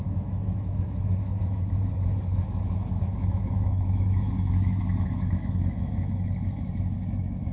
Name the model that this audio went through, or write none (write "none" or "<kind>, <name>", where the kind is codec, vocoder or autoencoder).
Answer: autoencoder, DAC-VAE